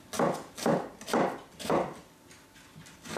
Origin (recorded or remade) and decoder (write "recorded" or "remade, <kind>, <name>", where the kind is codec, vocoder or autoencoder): recorded